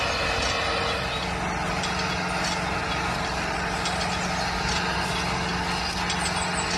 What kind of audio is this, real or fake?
real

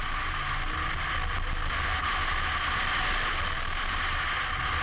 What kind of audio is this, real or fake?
real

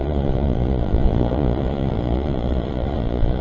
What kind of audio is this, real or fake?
fake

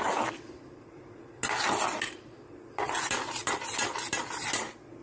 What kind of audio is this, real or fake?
real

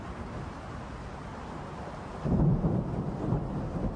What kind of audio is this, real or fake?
real